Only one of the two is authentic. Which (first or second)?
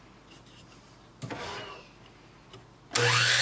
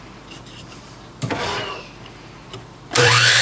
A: first